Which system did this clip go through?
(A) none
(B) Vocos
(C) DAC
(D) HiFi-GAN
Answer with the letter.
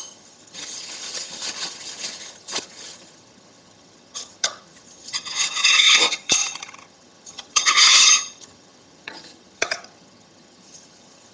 D